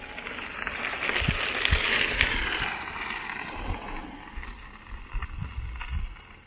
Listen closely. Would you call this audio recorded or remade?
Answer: recorded